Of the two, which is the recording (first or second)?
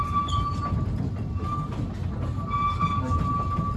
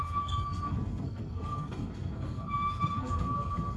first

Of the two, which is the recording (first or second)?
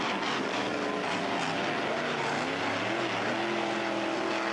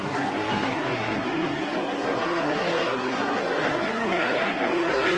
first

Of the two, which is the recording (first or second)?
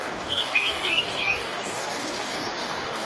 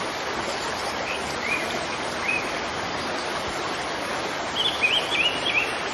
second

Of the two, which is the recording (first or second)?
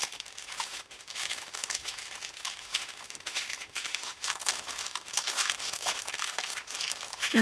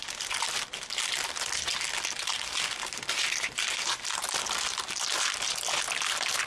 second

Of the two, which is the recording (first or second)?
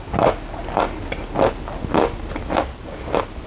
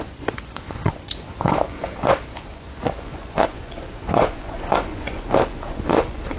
first